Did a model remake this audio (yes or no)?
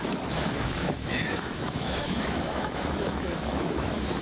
yes